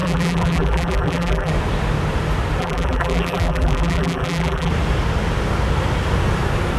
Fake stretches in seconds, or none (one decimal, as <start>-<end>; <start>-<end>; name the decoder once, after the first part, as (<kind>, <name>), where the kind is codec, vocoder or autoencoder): 0.0-1.5 (vocoder, BigVGAN v2); 2.6-4.7